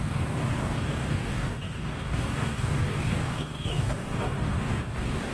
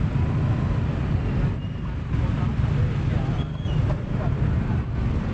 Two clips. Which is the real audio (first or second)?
second